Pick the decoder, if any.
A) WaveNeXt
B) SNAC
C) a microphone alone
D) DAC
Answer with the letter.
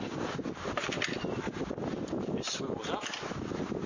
C